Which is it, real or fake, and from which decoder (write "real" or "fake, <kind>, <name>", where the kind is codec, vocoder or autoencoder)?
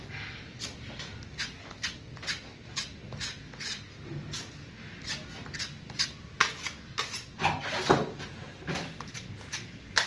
real